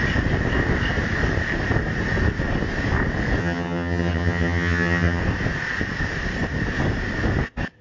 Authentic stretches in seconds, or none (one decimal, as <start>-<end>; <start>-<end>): 0.0-3.4; 5.2-7.8